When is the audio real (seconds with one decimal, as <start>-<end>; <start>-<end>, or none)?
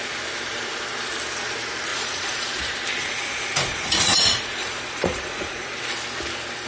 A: 0.0-1.9; 2.6-3.0; 5.7-6.7